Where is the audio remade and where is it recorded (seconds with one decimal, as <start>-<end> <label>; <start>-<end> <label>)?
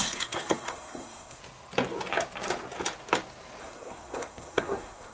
0.0-1.4 remade; 1.4-3.6 recorded; 3.6-5.1 remade